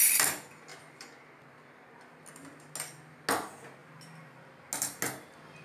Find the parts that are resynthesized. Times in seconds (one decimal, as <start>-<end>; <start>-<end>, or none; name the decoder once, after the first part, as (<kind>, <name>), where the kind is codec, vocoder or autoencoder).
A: none